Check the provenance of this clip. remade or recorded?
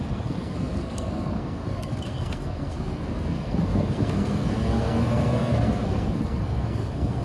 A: remade